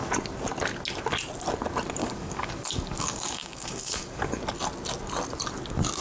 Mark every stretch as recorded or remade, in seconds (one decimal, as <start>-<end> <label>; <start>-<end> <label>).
0.0-2.0 recorded; 2.0-4.4 remade; 4.4-6.0 recorded